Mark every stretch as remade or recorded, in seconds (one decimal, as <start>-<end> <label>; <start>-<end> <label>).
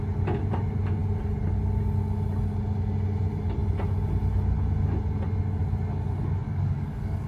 0.0-6.4 recorded; 6.4-7.3 remade